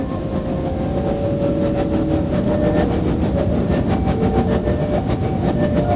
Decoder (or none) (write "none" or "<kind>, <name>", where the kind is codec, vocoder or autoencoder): none